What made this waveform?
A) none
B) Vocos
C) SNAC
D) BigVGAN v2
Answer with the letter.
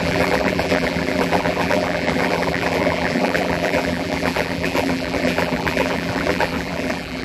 D